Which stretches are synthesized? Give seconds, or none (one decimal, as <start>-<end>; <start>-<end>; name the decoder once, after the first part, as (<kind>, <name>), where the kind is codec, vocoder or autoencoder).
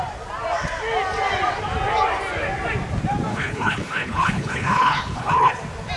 3.3-5.5 (codec, HILCodec)